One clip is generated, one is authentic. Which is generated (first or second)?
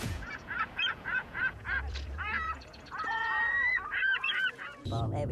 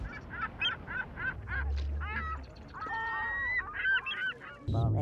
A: first